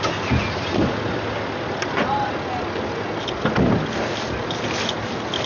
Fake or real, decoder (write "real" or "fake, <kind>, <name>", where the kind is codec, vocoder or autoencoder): real